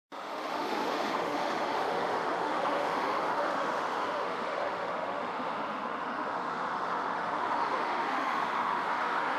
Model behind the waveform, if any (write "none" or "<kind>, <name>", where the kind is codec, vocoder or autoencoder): autoencoder, DAC-VAE